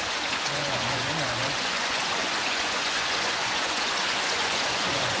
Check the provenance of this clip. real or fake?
fake